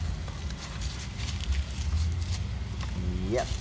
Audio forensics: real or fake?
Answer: real